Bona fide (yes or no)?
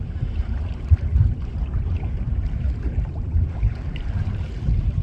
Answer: no